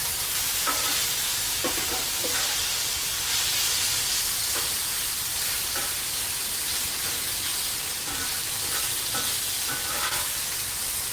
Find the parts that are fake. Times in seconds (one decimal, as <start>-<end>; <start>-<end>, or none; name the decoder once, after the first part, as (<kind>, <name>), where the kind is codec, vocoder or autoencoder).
1.3-5.5 (vocoder, BigVGAN v2)